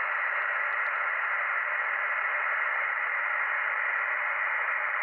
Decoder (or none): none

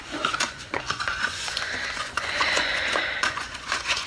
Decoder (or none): vocoder, Vocos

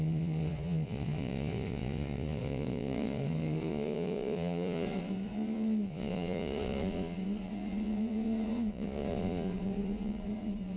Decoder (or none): vocoder, Vocos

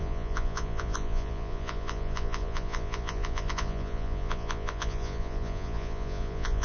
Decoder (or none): vocoder, Vocos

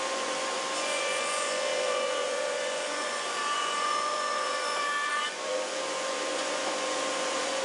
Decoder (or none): vocoder, Vocos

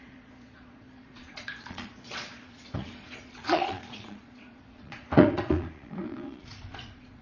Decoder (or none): vocoder, Vocos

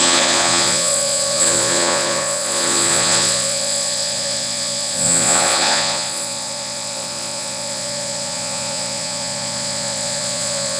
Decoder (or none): vocoder, Vocos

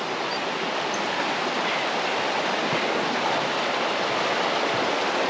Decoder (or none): none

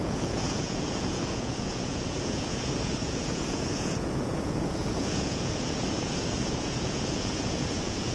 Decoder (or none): vocoder, Vocos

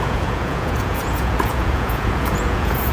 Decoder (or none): vocoder, Vocos